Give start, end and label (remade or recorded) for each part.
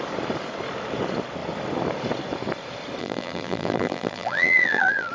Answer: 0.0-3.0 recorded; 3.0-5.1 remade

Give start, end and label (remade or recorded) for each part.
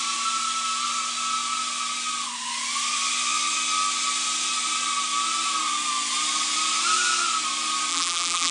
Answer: 0.0-7.9 recorded; 7.9-8.5 remade